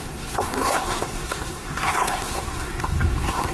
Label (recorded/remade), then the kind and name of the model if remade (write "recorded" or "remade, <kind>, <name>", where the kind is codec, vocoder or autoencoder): remade, codec, SNAC